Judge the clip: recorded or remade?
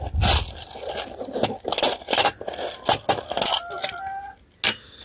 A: recorded